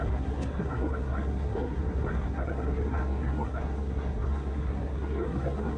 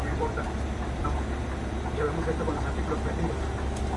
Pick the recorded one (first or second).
second